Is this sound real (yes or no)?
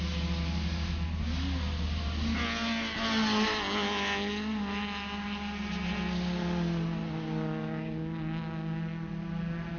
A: yes